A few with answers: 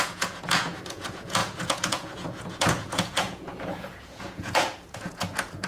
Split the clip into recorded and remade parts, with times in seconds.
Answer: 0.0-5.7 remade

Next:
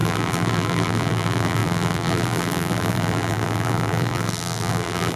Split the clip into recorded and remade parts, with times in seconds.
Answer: 0.0-5.2 remade

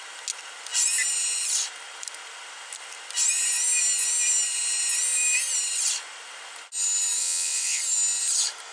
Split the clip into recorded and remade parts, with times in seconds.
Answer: 0.0-7.2 recorded; 7.2-7.8 remade; 7.8-8.7 recorded

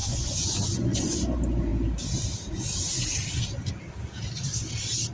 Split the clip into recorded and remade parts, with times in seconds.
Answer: 0.0-1.2 remade; 1.2-5.1 recorded

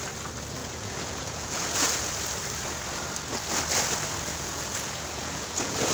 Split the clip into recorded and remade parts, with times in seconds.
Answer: 0.0-0.6 recorded; 0.6-2.1 remade; 2.1-4.3 recorded; 4.3-5.9 remade